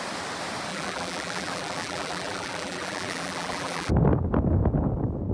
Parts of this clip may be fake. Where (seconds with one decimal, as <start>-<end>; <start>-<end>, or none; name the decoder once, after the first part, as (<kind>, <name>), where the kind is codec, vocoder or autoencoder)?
0.7-3.9 (vocoder, BigVGAN v2)